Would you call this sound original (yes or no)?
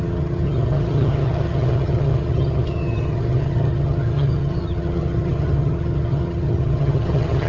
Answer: no